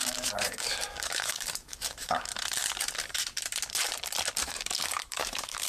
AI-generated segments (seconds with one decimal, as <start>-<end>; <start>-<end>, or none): 0.0-2.3; 4.4-5.7